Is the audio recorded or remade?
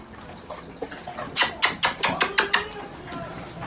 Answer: recorded